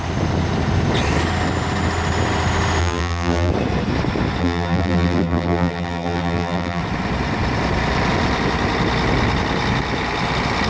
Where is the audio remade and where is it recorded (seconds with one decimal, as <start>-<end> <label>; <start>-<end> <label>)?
0.0-2.8 recorded; 2.8-3.5 remade; 3.5-4.4 recorded; 4.4-6.8 remade; 6.8-10.7 recorded